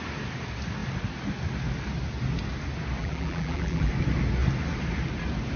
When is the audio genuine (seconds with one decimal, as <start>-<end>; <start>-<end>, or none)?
0.0-3.0; 3.9-5.6